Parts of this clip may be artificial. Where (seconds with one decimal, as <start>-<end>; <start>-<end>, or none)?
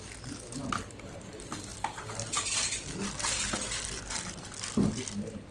none